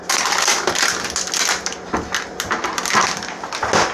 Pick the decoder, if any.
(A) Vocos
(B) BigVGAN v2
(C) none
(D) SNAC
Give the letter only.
C